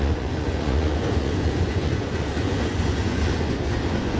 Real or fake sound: fake